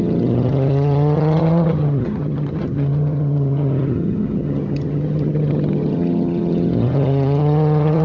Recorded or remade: remade